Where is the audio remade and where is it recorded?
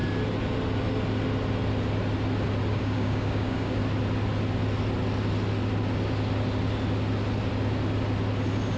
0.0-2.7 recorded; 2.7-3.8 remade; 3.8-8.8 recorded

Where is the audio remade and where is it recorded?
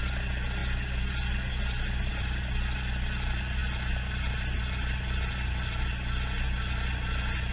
0.0-7.5 recorded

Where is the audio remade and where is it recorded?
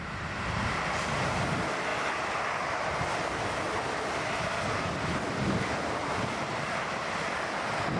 0.0-8.0 recorded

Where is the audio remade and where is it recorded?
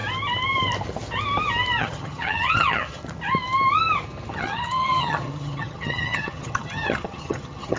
0.0-1.8 recorded; 1.8-3.0 remade; 3.0-4.3 recorded; 4.3-7.8 remade